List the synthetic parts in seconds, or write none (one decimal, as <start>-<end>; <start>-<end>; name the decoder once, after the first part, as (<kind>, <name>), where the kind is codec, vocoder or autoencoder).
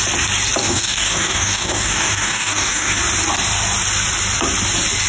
0.6-3.0 (codec, DAC)